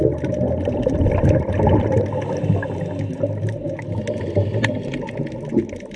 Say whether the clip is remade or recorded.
recorded